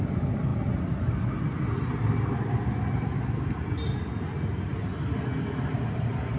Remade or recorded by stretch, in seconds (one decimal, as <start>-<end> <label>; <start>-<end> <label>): 0.0-6.4 recorded

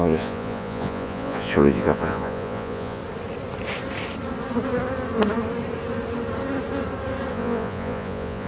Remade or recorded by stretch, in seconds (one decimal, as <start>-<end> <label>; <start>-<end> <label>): 0.0-3.0 remade; 3.0-7.3 recorded; 7.3-8.5 remade

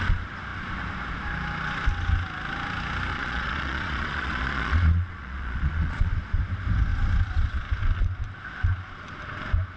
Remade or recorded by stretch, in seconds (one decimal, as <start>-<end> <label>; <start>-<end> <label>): 0.0-3.1 recorded; 3.1-6.1 remade; 6.1-9.8 recorded

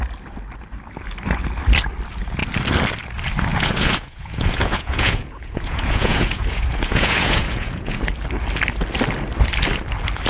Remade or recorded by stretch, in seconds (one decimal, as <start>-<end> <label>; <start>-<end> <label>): 0.0-3.5 recorded; 3.5-8.0 remade; 8.0-10.3 recorded

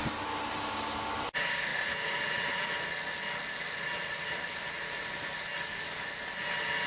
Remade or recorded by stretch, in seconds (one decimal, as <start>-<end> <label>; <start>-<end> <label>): 0.0-1.7 recorded; 1.7-2.7 remade; 2.7-6.9 recorded

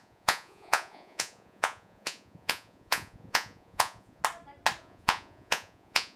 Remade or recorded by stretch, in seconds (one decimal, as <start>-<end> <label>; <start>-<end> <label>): 0.0-4.2 remade; 4.2-4.8 recorded; 4.8-6.2 remade

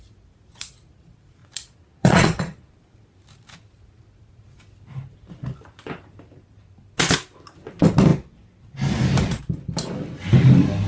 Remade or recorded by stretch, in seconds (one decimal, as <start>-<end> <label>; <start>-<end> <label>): 0.0-1.4 recorded; 1.4-2.7 remade; 2.7-10.9 recorded

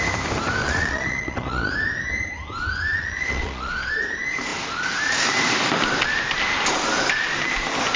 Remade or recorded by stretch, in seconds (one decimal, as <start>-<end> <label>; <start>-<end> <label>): 0.0-0.6 recorded; 0.6-1.7 remade; 1.7-2.9 recorded; 2.9-3.9 remade; 3.9-8.0 recorded